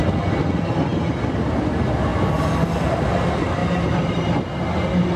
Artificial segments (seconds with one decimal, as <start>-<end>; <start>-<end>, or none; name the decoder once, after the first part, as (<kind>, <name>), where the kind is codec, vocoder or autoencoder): 3.6-4.3 (vocoder, BigVGAN v2)